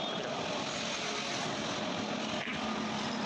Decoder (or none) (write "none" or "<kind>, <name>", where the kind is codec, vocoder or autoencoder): none